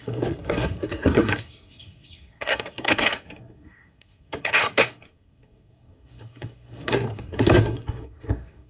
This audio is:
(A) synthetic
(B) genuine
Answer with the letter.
A